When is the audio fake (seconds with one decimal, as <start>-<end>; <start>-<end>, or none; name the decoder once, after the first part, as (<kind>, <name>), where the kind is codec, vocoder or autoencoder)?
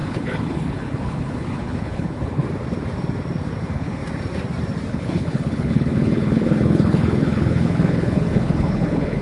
0.0-2.4 (codec, HILCodec); 3.6-4.0; 4.9-9.2